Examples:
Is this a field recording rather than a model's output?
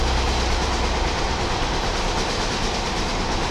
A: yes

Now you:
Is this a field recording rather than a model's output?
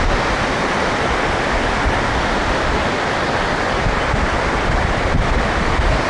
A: yes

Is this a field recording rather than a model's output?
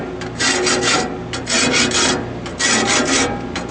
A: yes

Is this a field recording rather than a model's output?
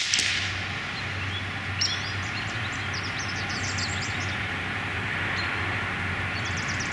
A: yes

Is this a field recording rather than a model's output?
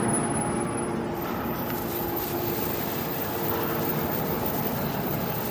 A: no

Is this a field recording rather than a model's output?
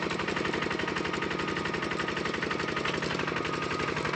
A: yes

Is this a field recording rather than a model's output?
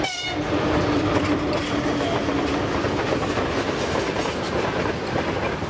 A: no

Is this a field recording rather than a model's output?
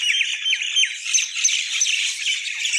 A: no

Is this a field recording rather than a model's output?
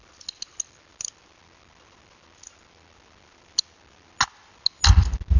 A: yes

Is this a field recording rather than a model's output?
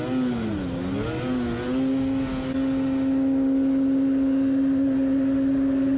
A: yes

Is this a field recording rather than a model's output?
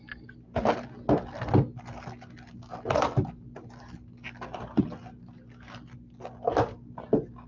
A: yes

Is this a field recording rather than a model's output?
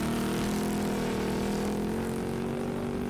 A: yes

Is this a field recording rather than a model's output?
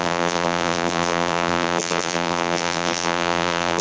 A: no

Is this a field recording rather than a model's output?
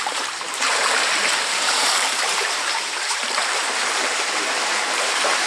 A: no